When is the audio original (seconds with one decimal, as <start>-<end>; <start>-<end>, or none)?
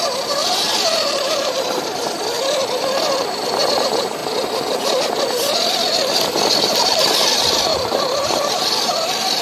0.0-0.4; 2.1-7.7; 8.6-9.4